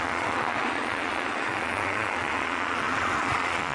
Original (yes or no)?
no